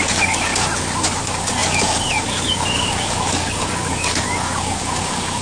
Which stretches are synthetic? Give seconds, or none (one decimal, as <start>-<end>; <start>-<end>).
0.0-0.5; 1.2-5.4